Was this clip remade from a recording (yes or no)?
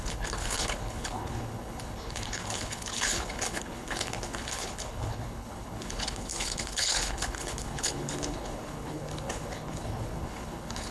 yes